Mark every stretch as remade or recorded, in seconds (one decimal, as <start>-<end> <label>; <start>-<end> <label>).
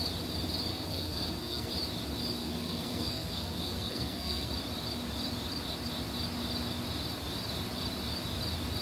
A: 0.0-0.7 recorded; 0.7-1.7 remade; 1.7-2.4 recorded; 2.4-4.5 remade; 4.5-8.8 recorded